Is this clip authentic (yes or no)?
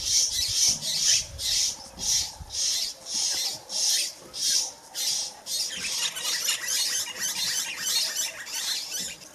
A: yes